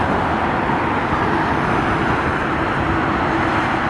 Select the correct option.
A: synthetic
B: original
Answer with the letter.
B